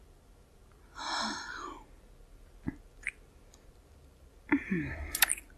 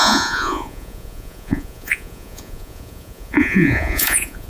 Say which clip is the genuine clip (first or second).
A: first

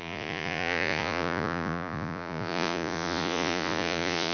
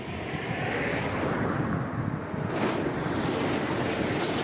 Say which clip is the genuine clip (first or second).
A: second